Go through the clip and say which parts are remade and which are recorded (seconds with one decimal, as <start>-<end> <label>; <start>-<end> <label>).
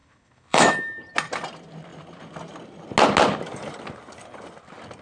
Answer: 0.0-1.0 remade; 1.0-5.0 recorded